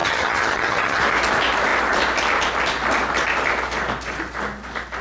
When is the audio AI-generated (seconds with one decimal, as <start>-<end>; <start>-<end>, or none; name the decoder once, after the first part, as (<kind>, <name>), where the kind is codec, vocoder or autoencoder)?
0.0-1.0 (vocoder, HiFi-GAN)